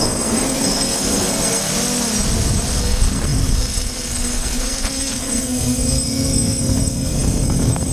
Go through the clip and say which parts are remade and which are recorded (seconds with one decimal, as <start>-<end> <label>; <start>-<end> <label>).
0.0-1.7 remade; 1.7-2.8 recorded; 2.8-7.9 remade